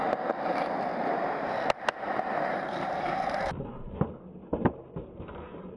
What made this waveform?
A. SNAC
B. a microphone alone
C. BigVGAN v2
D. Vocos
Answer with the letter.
B